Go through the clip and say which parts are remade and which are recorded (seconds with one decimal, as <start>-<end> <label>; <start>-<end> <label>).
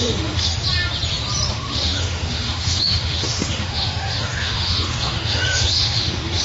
0.0-0.5 remade; 0.5-1.5 recorded; 1.5-6.4 remade